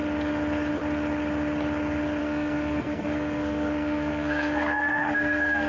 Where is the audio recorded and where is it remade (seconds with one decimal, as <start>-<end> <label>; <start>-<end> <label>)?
0.0-2.2 recorded; 2.2-5.7 remade